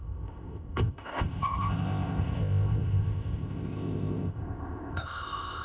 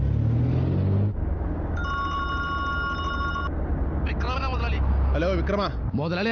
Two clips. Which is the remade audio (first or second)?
first